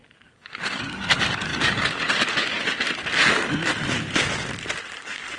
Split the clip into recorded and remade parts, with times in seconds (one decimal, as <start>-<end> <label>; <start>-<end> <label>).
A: 0.0-3.0 remade; 3.0-5.0 recorded; 5.0-5.4 remade